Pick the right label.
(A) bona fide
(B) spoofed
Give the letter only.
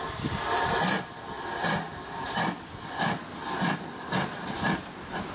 A